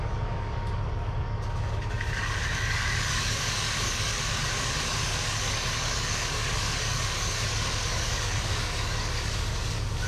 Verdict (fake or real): fake